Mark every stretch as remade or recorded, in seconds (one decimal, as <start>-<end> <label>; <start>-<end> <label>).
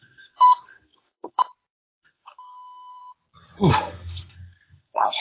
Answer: 0.0-1.4 remade; 1.4-2.0 recorded; 2.0-3.0 remade; 3.0-3.7 recorded; 3.7-5.2 remade